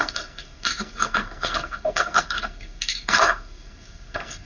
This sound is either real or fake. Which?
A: fake